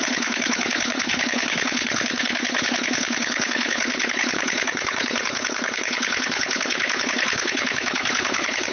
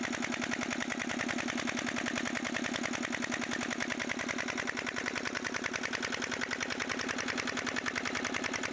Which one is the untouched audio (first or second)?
second